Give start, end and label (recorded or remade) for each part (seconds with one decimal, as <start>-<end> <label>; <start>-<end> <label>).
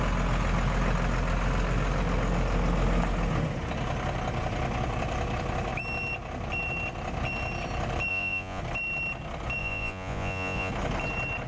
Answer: 0.0-8.1 recorded; 8.1-8.6 remade; 8.6-9.6 recorded; 9.6-10.7 remade; 10.7-11.5 recorded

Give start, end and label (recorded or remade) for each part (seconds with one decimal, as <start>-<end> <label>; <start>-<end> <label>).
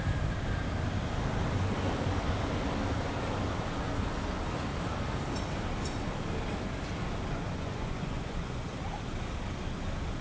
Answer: 0.0-7.5 recorded; 7.5-8.7 remade; 8.7-10.2 recorded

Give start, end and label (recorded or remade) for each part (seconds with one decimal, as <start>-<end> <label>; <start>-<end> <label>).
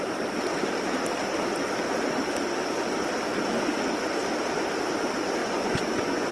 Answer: 0.0-5.4 recorded; 5.4-6.3 remade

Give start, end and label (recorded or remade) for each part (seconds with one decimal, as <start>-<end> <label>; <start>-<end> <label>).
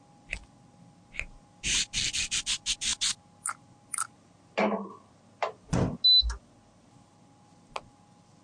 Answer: 0.0-8.4 recorded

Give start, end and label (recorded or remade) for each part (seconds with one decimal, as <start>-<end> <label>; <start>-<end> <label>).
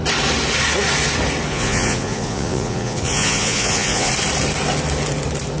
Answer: 0.0-1.5 recorded; 1.5-4.1 remade; 4.1-5.6 recorded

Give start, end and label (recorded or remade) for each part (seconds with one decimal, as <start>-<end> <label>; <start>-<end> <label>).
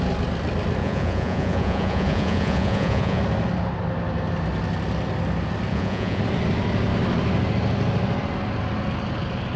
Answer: 0.0-0.8 recorded; 0.8-3.2 remade; 3.2-5.7 recorded; 5.7-6.2 remade; 6.2-9.6 recorded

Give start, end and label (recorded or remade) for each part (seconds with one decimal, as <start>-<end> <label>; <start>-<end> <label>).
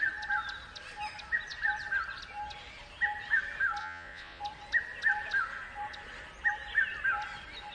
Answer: 0.0-3.8 recorded; 3.8-4.4 remade; 4.4-7.7 recorded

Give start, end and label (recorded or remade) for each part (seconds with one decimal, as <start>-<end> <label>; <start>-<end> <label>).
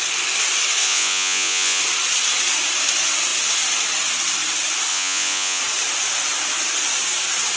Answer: 0.0-0.8 recorded; 0.8-1.8 remade; 1.8-4.9 recorded; 4.9-5.6 remade; 5.6-7.6 recorded